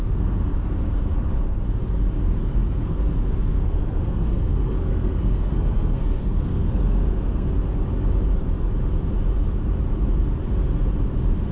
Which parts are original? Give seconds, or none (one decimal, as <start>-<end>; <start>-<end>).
0.7-2.4; 7.5-11.5